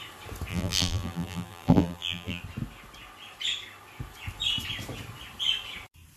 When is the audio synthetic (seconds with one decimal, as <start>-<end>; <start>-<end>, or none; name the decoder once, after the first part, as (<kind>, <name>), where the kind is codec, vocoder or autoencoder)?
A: 0.5-2.4 (vocoder, BigVGAN v2)